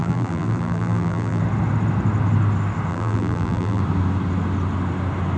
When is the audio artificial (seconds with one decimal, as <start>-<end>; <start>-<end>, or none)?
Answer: 0.0-1.4; 2.9-3.8